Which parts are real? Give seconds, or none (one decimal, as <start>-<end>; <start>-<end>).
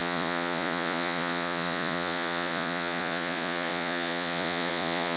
none